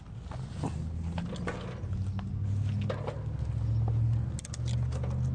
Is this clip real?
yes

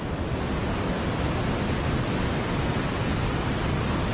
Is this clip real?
yes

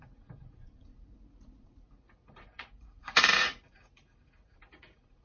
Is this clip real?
no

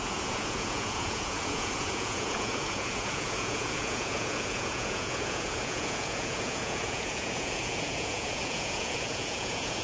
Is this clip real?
no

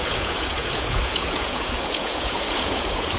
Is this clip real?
no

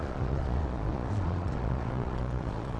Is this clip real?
no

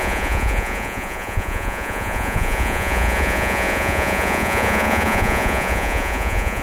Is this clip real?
no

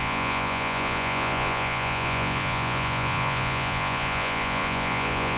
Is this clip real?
no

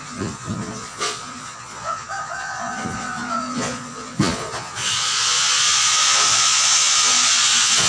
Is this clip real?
no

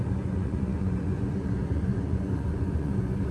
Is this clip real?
no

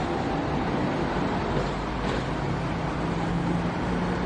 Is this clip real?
yes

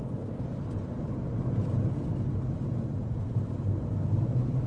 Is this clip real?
yes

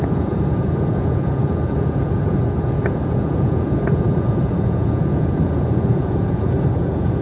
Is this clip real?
no